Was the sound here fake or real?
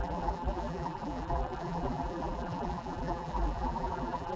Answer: fake